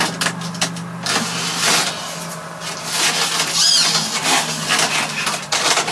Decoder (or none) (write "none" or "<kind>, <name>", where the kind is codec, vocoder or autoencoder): none